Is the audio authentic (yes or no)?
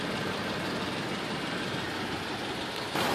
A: yes